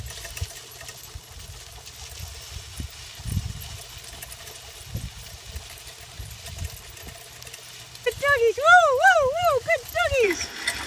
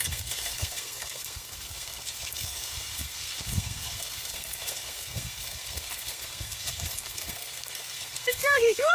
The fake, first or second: second